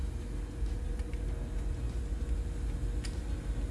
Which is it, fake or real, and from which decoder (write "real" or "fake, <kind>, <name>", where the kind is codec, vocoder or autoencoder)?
real